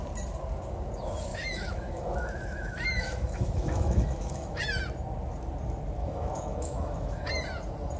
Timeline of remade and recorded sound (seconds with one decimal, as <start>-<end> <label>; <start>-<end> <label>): 0.0-1.3 recorded; 1.3-4.6 remade; 4.6-6.0 recorded; 6.0-7.3 remade; 7.3-8.0 recorded